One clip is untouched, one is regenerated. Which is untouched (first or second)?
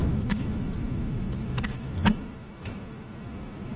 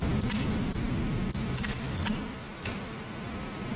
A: second